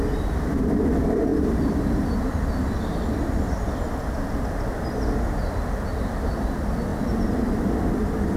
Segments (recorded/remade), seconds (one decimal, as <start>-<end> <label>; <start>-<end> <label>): 0.0-8.4 recorded